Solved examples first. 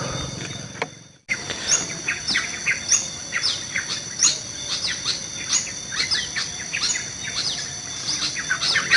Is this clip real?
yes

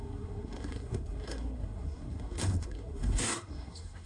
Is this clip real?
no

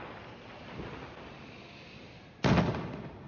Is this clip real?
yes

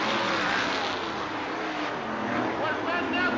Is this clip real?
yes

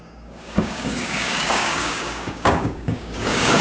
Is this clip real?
no